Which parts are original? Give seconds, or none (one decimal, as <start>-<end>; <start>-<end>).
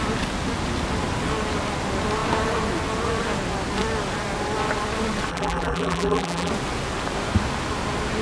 0.0-5.3; 6.5-8.2